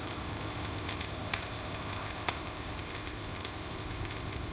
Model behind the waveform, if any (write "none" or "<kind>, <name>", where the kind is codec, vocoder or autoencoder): codec, ZipCodec